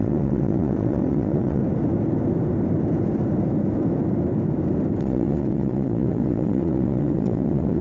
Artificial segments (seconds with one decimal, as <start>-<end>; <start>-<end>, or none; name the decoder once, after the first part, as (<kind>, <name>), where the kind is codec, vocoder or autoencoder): 0.0-1.6 (vocoder, WaveNeXt); 5.0-7.8